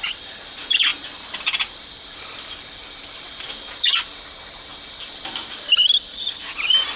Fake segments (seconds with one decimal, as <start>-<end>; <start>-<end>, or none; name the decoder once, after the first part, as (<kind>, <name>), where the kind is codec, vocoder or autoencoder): none